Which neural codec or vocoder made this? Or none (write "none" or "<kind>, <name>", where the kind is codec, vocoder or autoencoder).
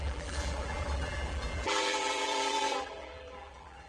vocoder, BigVGAN v2